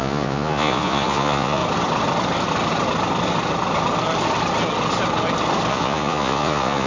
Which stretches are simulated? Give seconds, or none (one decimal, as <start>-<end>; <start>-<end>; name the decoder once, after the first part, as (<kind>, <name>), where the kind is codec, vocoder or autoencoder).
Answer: 0.0-1.6 (vocoder, Vocos); 5.7-6.9